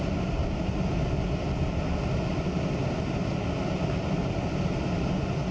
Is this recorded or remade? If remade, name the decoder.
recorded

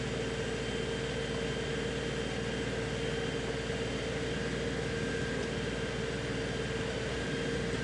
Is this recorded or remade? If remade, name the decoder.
recorded